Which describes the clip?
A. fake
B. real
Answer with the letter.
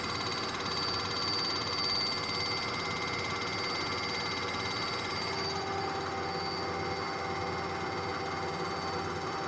B